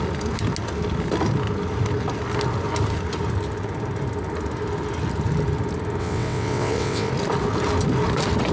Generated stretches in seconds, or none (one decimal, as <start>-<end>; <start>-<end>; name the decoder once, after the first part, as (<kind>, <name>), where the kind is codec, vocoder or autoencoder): 6.0-7.1 (vocoder, WaveNeXt)